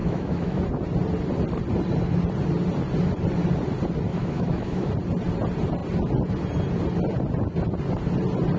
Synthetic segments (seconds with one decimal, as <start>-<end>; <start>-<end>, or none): 0.0-0.6; 4.1-4.9